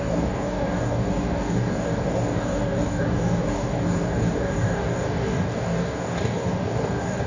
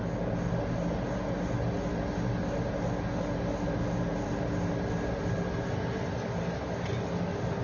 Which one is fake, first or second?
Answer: first